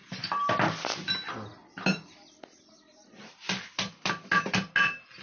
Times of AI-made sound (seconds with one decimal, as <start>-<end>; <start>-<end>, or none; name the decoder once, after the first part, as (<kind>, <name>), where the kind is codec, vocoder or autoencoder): none